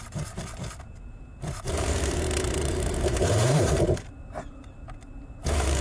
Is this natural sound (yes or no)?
no